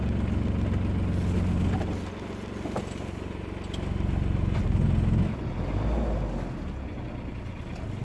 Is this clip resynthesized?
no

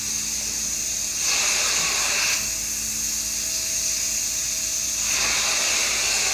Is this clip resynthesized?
no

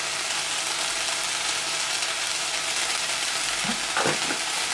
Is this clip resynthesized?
no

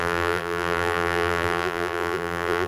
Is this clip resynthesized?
yes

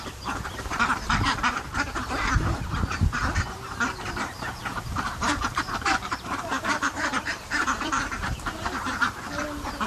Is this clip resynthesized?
yes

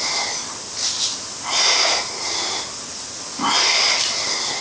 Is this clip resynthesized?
no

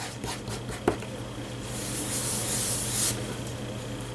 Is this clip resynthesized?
no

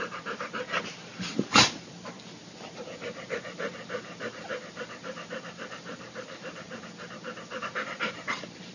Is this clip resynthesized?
yes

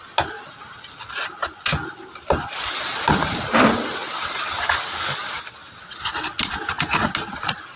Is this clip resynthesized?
no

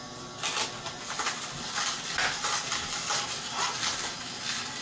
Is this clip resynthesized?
no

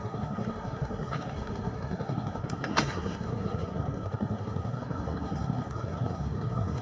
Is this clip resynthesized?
yes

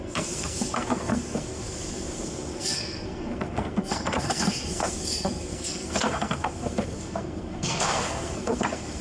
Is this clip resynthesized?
yes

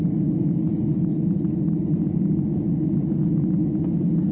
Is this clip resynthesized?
no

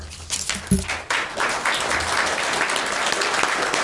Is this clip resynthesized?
no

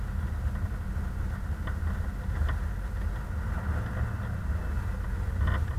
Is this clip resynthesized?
no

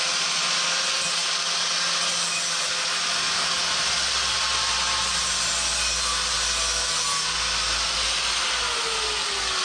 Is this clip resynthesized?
no